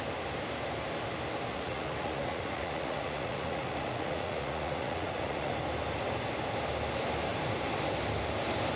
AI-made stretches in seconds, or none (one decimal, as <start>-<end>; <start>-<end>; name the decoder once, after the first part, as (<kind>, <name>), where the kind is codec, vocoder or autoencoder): 1.5-5.5 (vocoder, Vocos)